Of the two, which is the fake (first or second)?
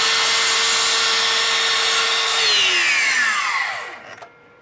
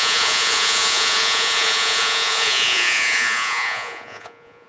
second